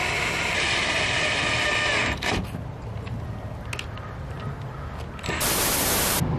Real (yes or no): yes